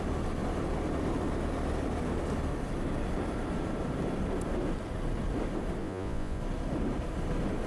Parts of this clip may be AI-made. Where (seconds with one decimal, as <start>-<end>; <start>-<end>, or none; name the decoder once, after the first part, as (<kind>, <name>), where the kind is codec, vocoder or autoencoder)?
5.8-6.4 (vocoder, Vocos)